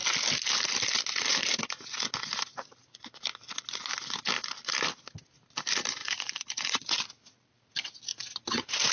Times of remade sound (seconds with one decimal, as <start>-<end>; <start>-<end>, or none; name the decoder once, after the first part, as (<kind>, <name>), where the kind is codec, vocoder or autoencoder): 6.0-7.0 (vocoder, Vocos); 8.1-8.9